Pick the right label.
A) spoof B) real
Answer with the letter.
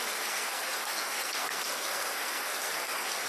A